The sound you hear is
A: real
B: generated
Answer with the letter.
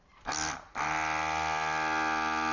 A